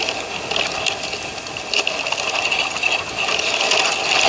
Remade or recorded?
recorded